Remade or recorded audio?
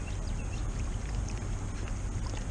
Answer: recorded